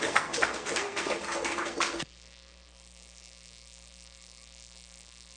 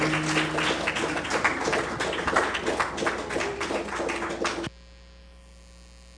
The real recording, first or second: second